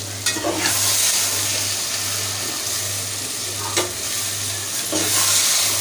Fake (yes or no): no